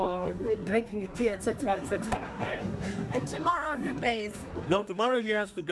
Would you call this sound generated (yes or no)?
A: yes